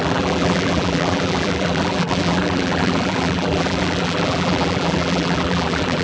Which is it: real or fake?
fake